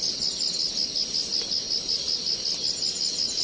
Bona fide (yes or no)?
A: yes